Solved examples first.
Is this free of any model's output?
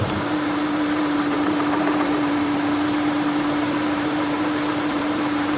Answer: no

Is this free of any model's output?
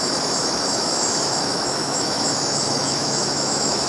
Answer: no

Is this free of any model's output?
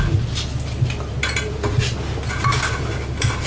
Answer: yes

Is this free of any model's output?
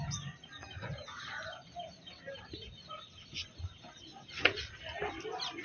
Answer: yes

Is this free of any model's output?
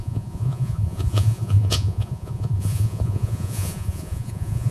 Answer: no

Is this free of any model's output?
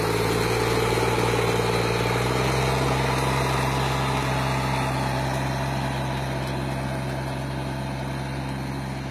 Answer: yes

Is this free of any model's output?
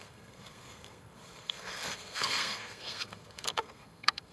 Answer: no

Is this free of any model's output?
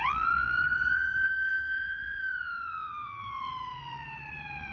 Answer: no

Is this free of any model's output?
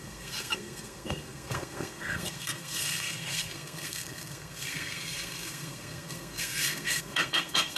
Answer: no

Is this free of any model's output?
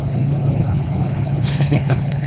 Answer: no